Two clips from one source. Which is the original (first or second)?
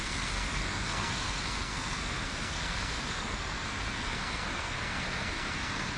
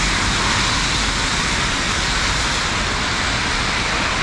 second